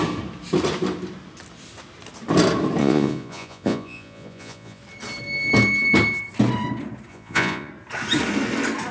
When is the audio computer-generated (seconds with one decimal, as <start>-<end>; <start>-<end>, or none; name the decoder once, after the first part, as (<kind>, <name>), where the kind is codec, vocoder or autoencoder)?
2.8-4.8 (vocoder, Vocos); 7.1-7.7